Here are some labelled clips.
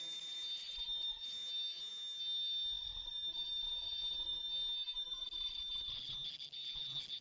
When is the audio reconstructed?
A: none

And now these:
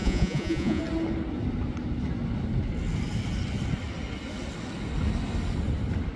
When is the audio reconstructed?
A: 0.0-0.8

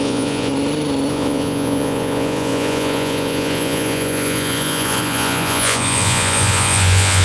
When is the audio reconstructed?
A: 0.0-0.5; 1.1-7.2

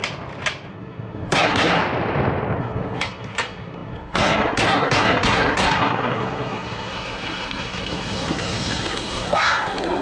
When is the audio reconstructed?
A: 0.7-1.8; 2.6-10.0